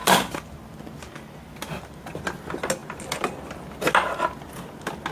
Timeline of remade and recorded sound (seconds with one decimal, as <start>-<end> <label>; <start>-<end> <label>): 0.0-5.1 recorded